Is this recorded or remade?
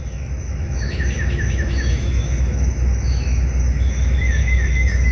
remade